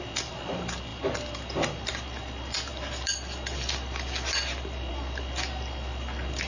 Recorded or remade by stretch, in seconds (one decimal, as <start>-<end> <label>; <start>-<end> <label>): 0.0-6.5 recorded